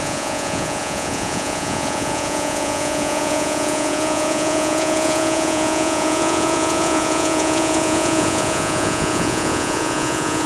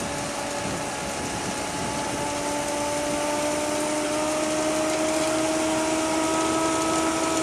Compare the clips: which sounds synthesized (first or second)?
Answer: first